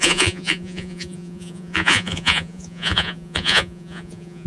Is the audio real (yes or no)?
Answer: no